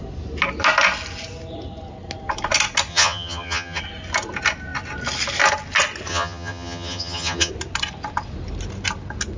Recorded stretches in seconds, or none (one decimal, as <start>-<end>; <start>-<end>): 0.0-2.9; 3.8-6.1; 7.5-9.4